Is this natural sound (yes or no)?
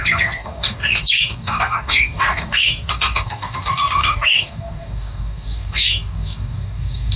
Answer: no